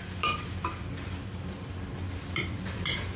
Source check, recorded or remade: remade